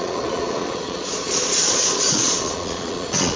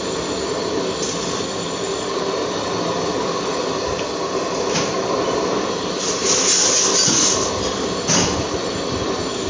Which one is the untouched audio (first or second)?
second